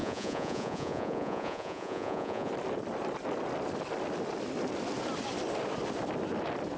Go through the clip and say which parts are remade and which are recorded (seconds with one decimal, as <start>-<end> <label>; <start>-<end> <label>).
0.0-2.5 remade; 2.5-6.8 recorded